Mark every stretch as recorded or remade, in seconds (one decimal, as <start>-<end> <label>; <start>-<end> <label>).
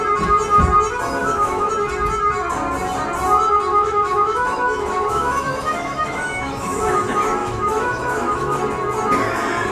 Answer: 0.0-1.2 recorded; 1.2-1.7 remade; 1.7-3.7 recorded; 3.7-6.8 remade; 6.8-7.4 recorded; 7.4-8.6 remade; 8.6-9.7 recorded